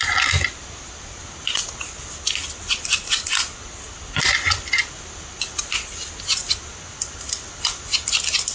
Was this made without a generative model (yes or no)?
yes